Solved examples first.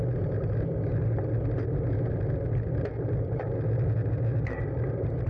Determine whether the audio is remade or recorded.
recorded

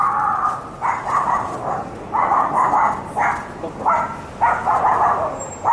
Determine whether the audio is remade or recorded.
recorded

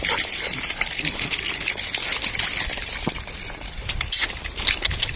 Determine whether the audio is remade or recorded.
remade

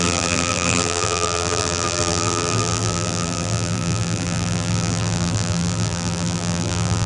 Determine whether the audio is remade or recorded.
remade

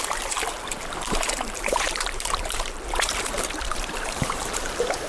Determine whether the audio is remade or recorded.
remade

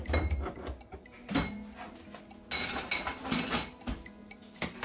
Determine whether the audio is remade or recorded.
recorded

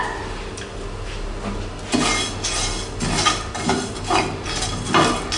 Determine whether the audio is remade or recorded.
recorded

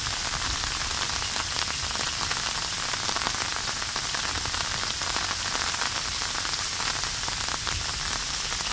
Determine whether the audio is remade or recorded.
remade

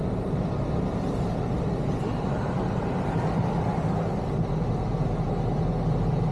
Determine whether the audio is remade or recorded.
recorded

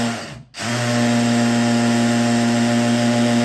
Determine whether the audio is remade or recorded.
recorded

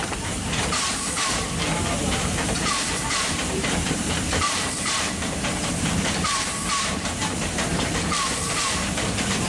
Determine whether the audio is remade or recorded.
remade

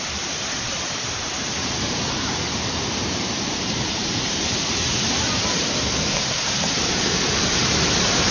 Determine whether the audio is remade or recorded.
remade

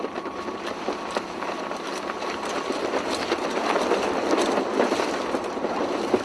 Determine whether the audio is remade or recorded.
remade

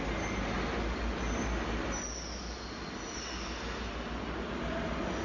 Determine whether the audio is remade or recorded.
recorded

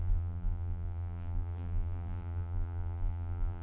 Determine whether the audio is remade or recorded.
remade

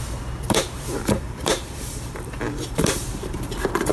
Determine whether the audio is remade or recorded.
remade